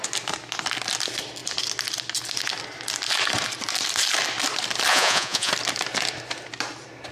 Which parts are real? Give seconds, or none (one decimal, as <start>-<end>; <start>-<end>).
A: 0.0-4.9; 5.5-7.1